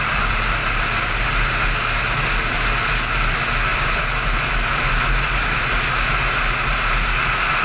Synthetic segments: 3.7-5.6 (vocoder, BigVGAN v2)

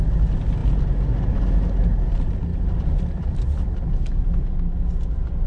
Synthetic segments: 2.5-3.9 (vocoder, BigVGAN v2)

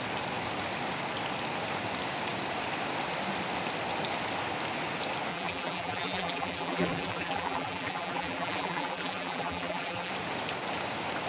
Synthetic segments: 5.3-10.1 (vocoder, BigVGAN v2)

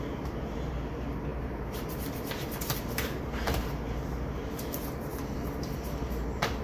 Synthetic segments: 0.0-6.6 (vocoder, BigVGAN v2)

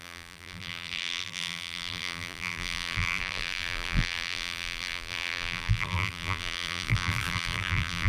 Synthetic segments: 0.0-8.1 (vocoder, BigVGAN v2)

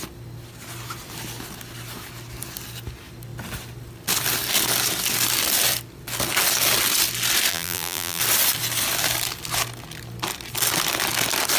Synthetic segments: 7.5-8.2 (vocoder, BigVGAN v2)